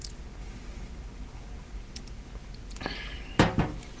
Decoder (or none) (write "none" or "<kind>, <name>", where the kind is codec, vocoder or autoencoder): none